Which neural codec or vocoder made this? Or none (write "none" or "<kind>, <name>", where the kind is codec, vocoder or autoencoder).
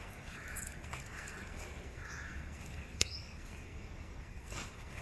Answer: codec, SNAC